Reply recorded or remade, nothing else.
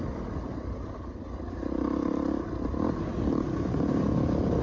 recorded